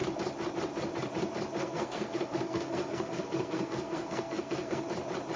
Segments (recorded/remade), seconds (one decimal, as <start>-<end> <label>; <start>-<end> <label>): 0.0-1.6 recorded; 1.6-4.8 remade; 4.8-5.4 recorded